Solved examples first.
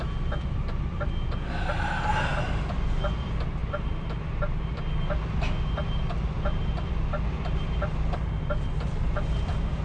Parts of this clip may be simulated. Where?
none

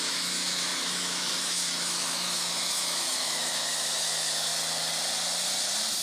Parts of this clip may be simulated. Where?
0.0-4.5

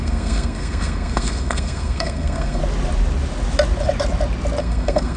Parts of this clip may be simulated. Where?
0.0-2.6; 4.6-5.2

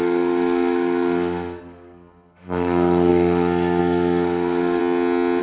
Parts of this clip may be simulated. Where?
0.0-4.8

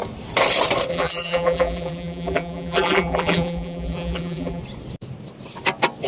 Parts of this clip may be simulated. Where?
0.9-4.6

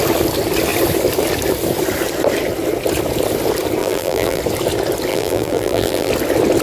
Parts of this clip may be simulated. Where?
3.8-4.4; 5.1-6.1